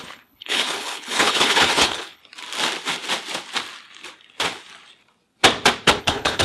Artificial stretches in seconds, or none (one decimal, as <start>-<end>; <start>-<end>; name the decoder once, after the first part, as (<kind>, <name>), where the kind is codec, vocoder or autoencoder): 0.0-2.2 (codec, HILCodec); 6.0-6.4